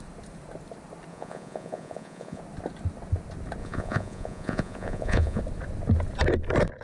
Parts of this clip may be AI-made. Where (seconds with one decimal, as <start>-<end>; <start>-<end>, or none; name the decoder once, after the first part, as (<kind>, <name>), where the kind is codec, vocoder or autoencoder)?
1.1-2.4 (vocoder, Vocos); 3.6-5.4